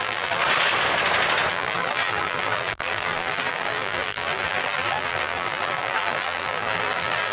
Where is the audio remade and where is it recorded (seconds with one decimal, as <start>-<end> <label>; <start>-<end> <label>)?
0.0-0.4 remade; 0.4-1.5 recorded; 1.5-7.3 remade